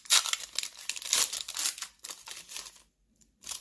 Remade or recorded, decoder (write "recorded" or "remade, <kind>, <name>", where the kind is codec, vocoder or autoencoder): recorded